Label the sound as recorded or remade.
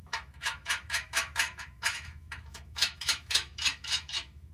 remade